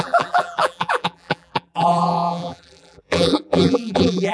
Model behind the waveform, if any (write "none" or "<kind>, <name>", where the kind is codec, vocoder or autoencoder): vocoder, BigVGAN v2